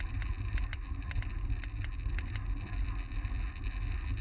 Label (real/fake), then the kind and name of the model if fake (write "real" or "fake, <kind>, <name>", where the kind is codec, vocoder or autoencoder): real